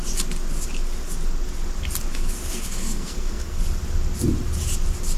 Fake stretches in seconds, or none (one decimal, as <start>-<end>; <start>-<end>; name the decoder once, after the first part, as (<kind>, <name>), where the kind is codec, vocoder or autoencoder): 2.1-3.6 (codec, SNAC)